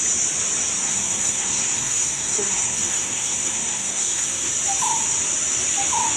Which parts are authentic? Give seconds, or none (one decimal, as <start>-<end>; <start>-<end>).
0.0-0.8; 4.5-6.2

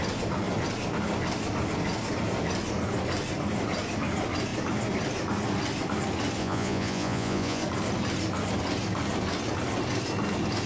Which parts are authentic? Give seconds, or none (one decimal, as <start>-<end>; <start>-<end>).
0.0-6.4; 7.6-10.7

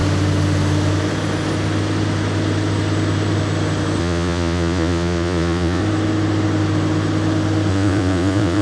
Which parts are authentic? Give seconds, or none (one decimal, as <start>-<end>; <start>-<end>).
0.0-4.0; 5.8-7.7